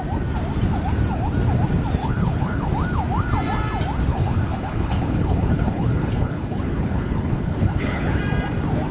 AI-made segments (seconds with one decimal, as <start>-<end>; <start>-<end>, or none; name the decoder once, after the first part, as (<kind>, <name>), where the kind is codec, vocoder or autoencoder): 2.0-2.7 (codec, HILCodec); 4.1-8.2